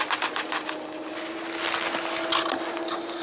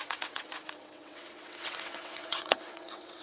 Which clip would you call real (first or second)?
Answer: first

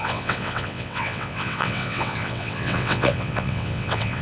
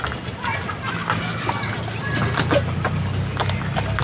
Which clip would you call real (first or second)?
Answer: second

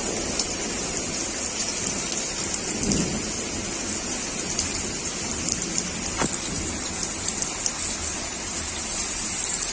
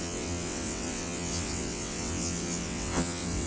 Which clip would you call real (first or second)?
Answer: first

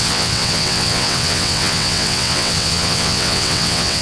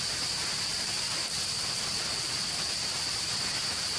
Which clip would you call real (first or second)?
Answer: second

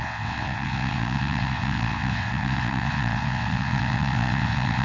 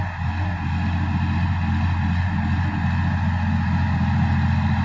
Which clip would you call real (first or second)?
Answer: second